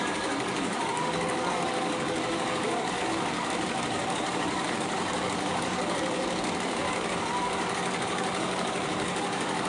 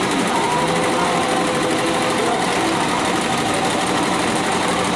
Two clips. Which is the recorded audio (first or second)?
second